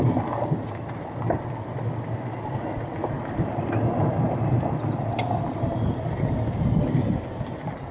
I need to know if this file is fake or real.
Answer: real